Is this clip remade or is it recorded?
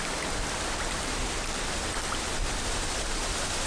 recorded